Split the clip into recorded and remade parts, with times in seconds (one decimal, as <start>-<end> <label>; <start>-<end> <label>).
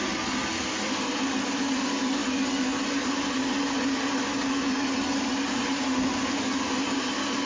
0.0-7.5 recorded